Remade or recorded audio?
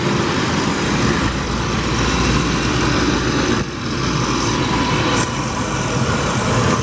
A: recorded